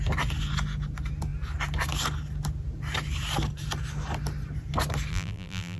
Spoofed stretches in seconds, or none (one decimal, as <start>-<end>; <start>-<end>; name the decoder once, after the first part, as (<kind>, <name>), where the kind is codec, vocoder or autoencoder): 5.1-5.8 (vocoder, BigVGAN v2)